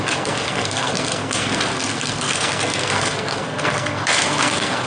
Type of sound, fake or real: fake